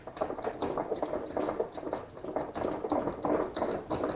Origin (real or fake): real